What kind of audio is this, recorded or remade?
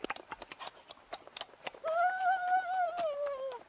recorded